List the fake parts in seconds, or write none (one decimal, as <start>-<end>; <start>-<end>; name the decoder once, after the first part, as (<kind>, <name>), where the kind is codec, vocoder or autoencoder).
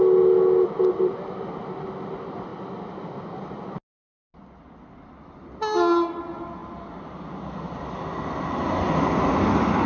none